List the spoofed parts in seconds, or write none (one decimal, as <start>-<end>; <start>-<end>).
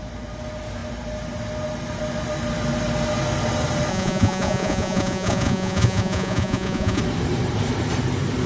3.9-7.0